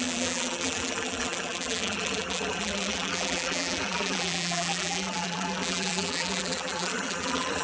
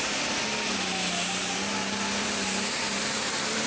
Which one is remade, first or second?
first